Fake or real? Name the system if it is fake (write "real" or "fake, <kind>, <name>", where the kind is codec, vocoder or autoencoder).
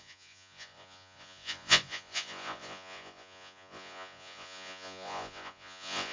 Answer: fake, vocoder, Vocos